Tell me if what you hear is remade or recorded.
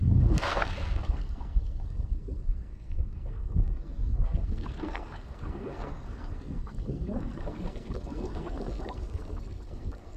remade